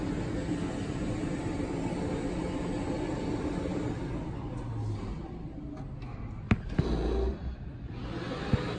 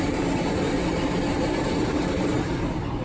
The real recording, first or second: first